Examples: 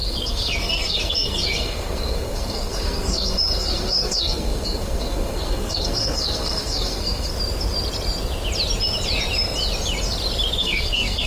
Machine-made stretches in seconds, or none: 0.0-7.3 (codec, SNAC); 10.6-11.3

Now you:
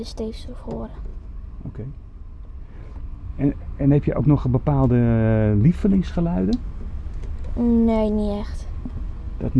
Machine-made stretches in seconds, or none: none